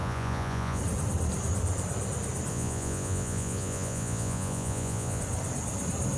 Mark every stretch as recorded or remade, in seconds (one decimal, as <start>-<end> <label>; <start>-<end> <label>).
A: 0.0-0.8 remade; 0.8-2.5 recorded; 2.5-5.2 remade; 5.2-6.2 recorded